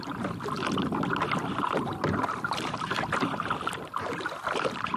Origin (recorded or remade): remade